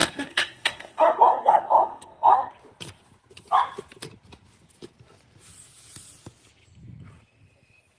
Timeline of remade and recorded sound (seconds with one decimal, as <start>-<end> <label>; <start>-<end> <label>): 0.0-2.5 remade; 2.5-8.0 recorded